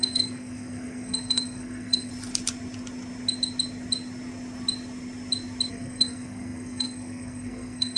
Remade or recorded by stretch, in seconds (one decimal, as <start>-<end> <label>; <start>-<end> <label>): 0.0-2.1 remade; 2.1-5.7 recorded; 5.7-8.0 remade